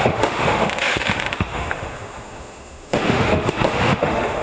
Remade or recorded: remade